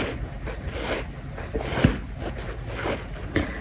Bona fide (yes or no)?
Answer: yes